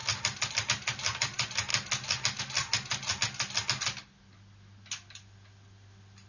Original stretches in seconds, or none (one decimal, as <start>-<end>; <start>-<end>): 0.0-6.3